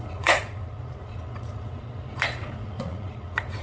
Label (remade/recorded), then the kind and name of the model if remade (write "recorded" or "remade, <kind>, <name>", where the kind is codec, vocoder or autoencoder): remade, vocoder, Vocos